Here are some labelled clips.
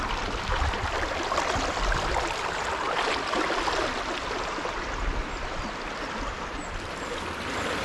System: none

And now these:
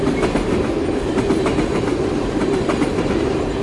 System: none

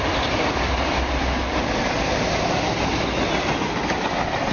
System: none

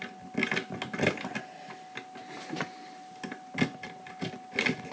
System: none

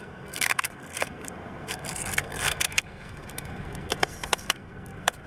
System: codec, SNAC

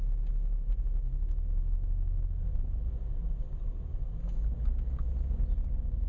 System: none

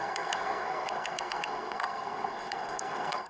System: codec, SNAC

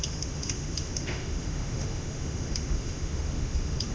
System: autoencoder, DAC-VAE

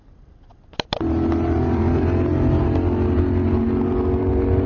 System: none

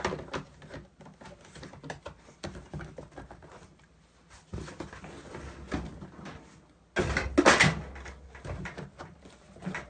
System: none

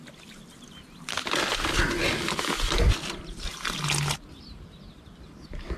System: none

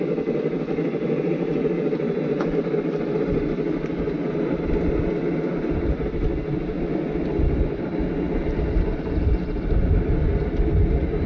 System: none